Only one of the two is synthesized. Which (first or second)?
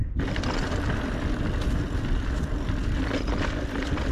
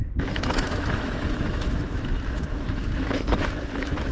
second